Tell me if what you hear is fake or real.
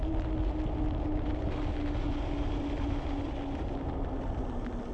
real